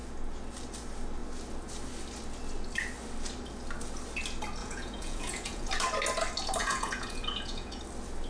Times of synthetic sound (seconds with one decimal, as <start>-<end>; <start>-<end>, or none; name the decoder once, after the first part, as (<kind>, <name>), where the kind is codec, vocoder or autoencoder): 4.6-5.7 (vocoder, Vocos); 6.6-7.8